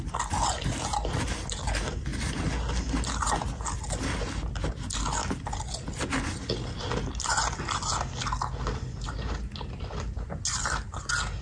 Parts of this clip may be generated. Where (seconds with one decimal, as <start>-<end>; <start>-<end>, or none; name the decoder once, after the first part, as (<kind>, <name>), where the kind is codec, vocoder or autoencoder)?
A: none